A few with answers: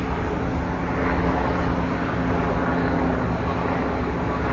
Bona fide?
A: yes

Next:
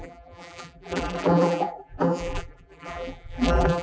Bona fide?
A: no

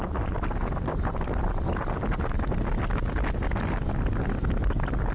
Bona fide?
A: yes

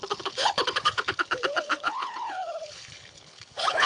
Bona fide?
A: no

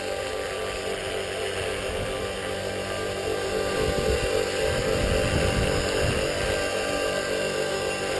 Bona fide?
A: yes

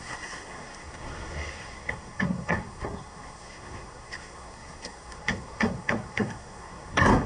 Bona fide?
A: no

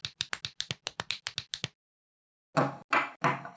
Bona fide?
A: yes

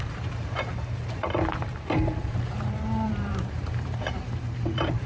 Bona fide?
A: no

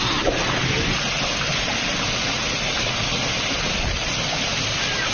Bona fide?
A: yes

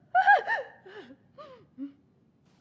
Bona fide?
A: yes